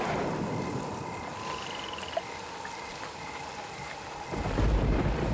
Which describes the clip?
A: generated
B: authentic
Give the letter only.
B